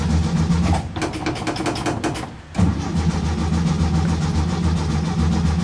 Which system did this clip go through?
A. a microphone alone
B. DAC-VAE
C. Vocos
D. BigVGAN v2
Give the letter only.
A